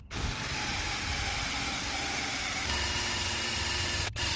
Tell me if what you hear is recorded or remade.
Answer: recorded